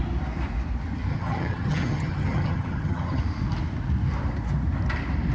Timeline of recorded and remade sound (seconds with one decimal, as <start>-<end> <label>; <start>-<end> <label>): 0.0-1.1 recorded; 1.1-3.2 remade; 3.2-5.3 recorded